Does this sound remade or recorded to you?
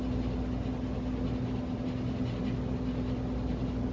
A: recorded